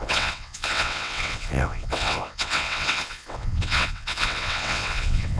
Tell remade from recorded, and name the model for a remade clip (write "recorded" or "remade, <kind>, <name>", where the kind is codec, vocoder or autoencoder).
remade, vocoder, WaveNeXt